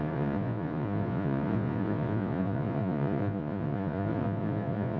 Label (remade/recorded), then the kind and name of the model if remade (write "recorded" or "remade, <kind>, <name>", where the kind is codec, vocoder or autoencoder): remade, vocoder, Vocos